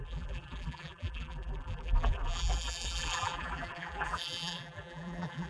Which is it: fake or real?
fake